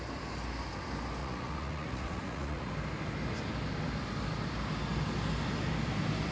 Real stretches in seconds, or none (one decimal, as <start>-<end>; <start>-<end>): 0.0-1.2; 2.7-6.3